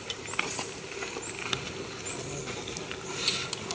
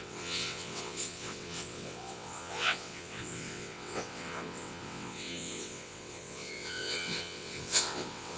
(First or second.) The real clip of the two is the first